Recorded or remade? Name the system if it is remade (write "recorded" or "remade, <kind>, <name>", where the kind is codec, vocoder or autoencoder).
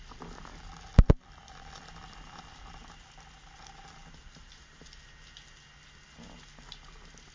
recorded